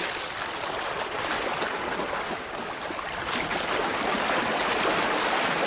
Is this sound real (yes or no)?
yes